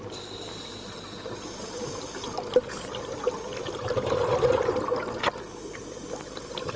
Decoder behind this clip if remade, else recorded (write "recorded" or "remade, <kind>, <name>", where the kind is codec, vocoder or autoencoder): recorded